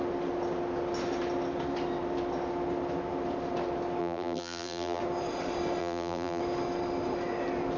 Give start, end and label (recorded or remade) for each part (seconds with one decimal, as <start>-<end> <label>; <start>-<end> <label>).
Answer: 0.0-4.0 recorded; 4.0-5.0 remade; 5.0-5.8 recorded; 5.8-6.4 remade; 6.4-7.8 recorded